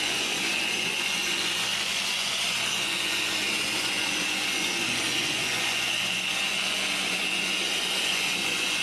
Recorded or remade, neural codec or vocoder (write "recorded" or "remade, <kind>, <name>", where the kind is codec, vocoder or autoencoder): remade, vocoder, Vocos